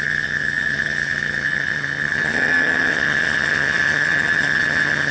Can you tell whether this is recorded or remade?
remade